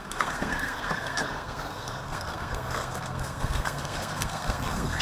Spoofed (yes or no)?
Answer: yes